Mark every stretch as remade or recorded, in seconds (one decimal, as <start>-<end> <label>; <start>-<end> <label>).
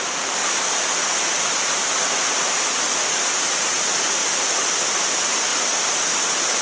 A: 0.0-6.6 recorded